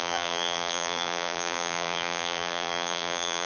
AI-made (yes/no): yes